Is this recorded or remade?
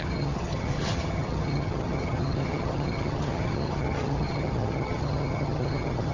remade